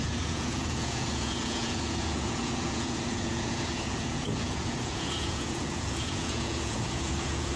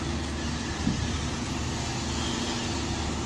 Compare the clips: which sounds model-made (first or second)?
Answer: first